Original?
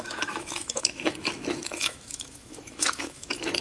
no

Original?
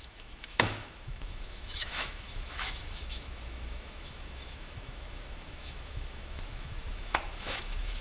no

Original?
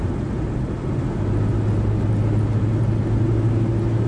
yes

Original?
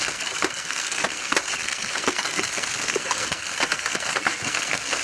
no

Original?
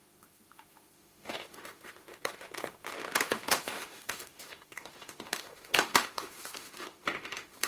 no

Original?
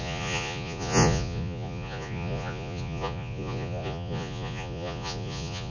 no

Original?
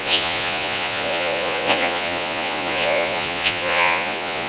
no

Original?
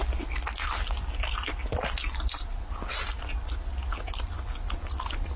yes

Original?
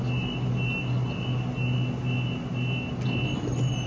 yes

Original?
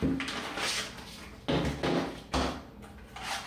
yes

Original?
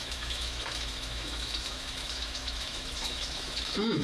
no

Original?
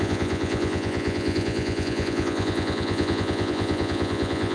no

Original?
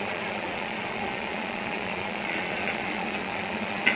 no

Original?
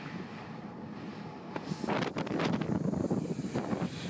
yes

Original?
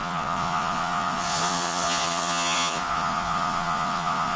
no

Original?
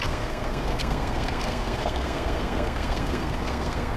no